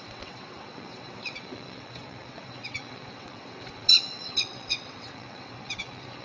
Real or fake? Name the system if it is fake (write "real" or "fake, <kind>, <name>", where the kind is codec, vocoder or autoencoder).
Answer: fake, vocoder, WaveNeXt